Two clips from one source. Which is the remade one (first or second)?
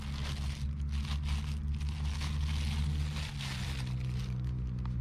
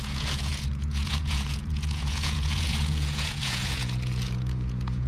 second